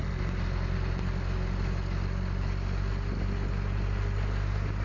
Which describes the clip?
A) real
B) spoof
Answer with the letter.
A